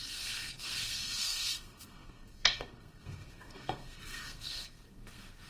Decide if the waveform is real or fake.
fake